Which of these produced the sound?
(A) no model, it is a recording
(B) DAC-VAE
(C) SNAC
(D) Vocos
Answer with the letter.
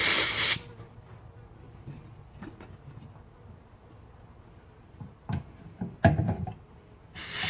A